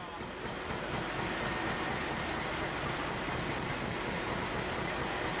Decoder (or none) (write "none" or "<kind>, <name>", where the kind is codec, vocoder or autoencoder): none